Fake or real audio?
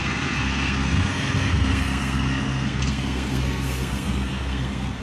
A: fake